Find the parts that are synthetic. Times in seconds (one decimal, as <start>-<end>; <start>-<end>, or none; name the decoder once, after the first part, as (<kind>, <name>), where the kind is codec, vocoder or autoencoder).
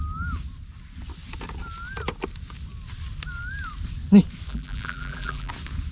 4.5-5.5 (vocoder, BigVGAN v2)